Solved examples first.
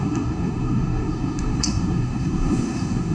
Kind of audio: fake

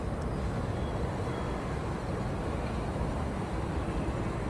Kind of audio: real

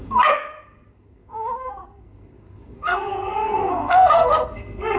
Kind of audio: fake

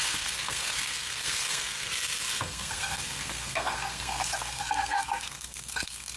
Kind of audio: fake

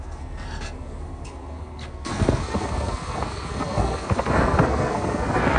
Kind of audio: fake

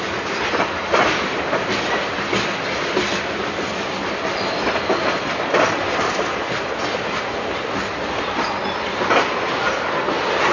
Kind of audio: real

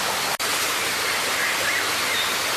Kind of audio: real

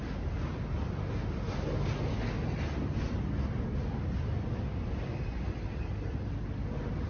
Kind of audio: real